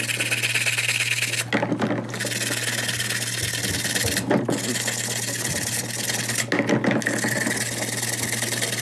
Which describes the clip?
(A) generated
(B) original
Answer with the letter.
B